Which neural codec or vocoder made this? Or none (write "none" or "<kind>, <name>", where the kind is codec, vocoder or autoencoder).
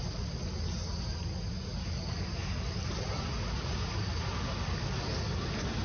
none